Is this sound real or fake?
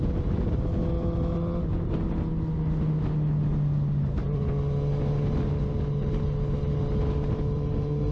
real